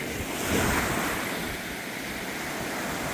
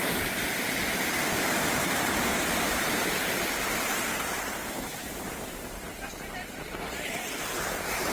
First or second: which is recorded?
first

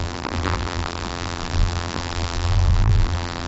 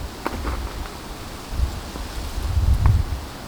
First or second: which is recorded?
second